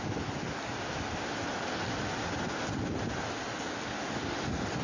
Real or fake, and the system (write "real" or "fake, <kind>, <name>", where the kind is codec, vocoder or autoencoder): real